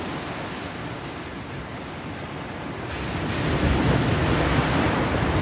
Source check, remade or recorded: recorded